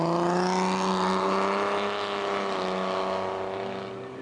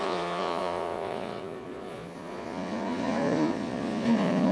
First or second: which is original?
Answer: first